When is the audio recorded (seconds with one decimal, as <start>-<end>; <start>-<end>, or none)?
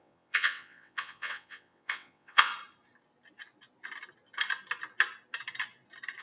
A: 2.5-6.2